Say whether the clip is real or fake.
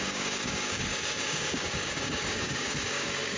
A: fake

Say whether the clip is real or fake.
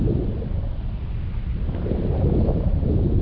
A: real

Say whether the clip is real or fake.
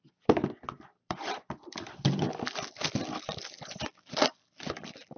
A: fake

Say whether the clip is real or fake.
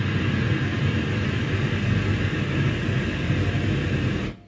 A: real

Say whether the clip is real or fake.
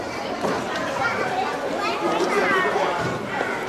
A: fake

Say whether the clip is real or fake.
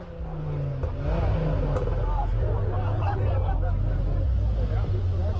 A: real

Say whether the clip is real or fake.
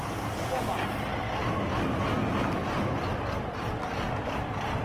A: real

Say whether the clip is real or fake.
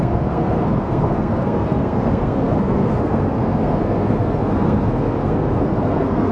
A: fake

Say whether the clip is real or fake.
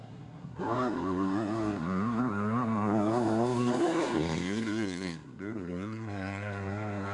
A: fake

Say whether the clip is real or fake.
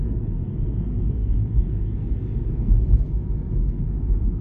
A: fake